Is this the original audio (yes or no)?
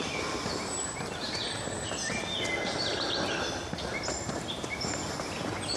yes